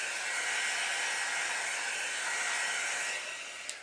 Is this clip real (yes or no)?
yes